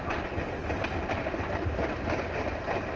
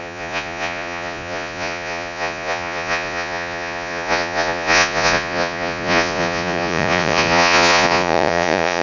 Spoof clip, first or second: second